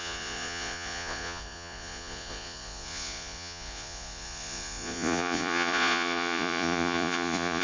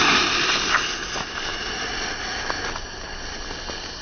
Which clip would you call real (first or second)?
second